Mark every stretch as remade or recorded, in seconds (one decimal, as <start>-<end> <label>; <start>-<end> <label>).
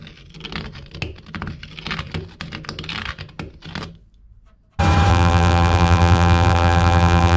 0.0-5.1 recorded; 5.1-7.4 remade